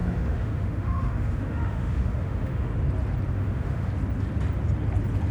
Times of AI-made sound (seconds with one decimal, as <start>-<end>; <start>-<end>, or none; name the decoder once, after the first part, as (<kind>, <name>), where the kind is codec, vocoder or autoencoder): 0.0-2.7 (autoencoder, DAC-VAE); 3.3-3.9